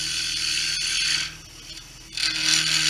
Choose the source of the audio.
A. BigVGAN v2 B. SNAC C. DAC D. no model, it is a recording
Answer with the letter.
D